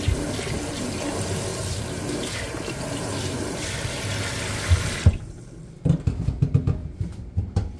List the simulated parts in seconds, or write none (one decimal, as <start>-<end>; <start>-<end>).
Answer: 1.5-5.3; 6.8-7.8